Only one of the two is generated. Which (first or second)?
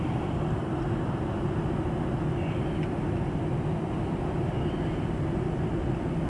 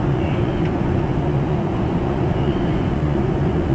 second